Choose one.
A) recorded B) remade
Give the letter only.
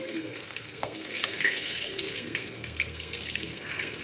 B